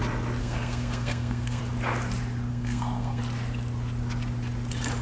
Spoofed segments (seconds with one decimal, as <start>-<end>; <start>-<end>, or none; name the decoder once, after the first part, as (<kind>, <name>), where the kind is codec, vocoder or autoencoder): 0.4-1.6 (codec, SNAC); 2.5-3.2